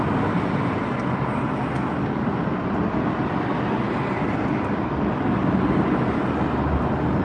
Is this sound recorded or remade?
recorded